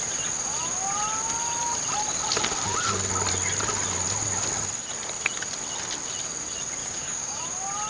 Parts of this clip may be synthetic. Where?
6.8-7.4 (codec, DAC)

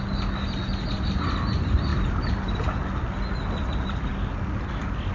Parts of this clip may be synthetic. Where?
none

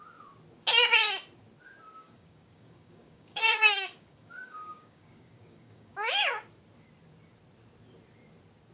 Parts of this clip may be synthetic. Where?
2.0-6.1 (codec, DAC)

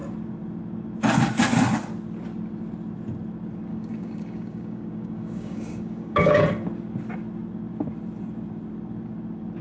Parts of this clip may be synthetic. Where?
3.7-6.4 (codec, DAC)

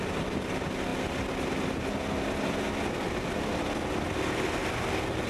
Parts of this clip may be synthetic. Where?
none

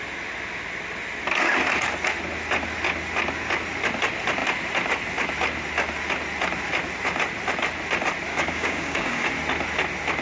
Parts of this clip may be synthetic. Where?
8.3-9.3 (codec, DAC)

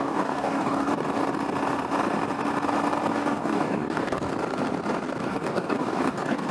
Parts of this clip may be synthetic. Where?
0.0-0.9 (codec, DAC); 3.1-4.3; 5.2-6.5

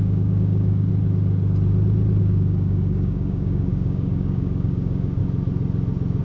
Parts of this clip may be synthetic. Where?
0.0-0.9 (codec, DAC); 2.2-5.2